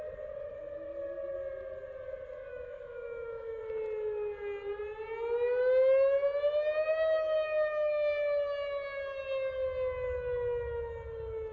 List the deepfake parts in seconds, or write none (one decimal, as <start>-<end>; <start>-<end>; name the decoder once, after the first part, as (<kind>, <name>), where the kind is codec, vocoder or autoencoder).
2.5-3.6 (autoencoder, DAC-VAE)